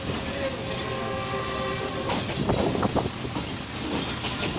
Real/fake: real